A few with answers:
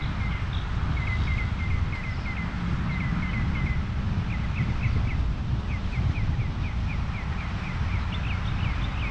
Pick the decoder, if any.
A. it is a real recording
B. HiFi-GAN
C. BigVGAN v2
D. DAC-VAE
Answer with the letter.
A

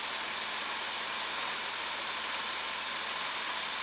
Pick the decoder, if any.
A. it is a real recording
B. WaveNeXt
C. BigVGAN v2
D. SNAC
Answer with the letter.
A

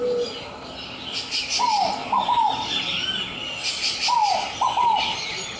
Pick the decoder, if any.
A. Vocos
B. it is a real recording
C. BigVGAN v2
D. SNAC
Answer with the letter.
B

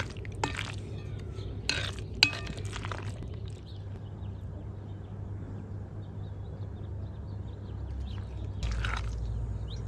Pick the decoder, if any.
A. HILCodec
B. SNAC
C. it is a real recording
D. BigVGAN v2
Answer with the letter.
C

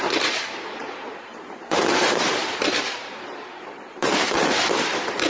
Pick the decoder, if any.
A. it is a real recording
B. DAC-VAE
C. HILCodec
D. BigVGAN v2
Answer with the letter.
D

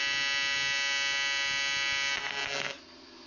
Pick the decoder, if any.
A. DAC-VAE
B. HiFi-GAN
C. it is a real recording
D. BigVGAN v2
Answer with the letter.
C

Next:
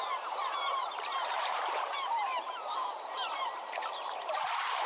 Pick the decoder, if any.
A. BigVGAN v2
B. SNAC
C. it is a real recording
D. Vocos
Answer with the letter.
A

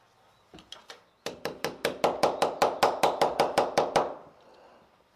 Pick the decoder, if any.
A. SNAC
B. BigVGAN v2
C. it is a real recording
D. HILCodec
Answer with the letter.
C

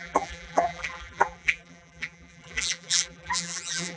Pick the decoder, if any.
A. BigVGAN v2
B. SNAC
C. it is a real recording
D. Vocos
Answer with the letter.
A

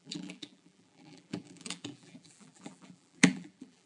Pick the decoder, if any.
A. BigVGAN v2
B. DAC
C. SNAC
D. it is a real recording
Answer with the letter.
A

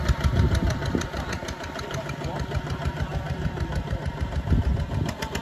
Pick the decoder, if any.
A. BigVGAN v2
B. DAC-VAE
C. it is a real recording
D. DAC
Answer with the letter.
C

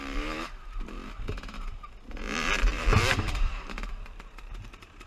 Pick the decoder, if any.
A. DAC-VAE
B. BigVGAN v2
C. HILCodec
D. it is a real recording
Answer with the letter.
B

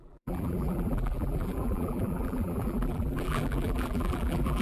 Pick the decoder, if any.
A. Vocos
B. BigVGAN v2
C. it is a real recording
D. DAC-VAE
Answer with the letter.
B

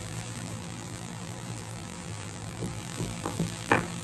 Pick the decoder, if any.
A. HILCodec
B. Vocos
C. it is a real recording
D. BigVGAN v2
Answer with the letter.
D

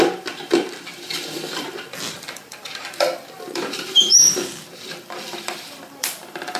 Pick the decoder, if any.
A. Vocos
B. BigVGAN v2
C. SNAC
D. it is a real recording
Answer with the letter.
B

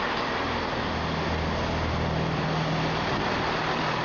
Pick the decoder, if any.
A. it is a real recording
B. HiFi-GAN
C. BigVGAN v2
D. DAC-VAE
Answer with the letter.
A